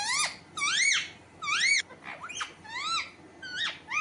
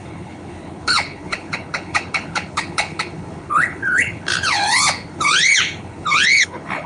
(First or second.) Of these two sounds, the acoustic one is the first